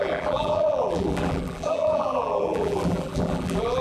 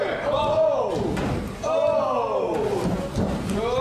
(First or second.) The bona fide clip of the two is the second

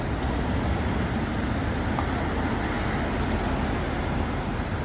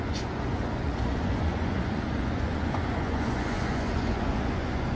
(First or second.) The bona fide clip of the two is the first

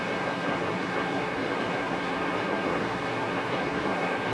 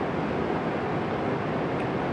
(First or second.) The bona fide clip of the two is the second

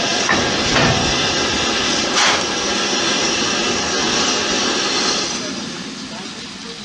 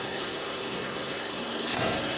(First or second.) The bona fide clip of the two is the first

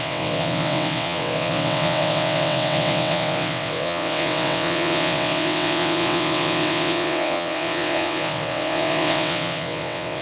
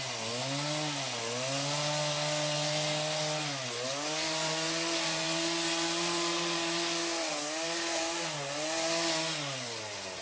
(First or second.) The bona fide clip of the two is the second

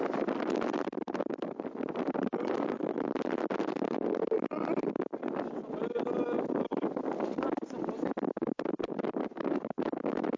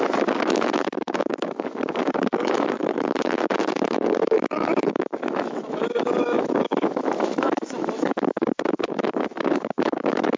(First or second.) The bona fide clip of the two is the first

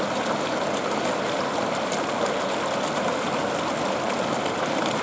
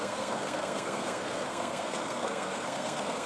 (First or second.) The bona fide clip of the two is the first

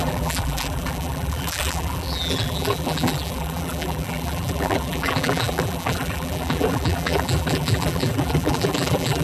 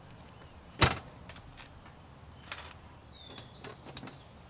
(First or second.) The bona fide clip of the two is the second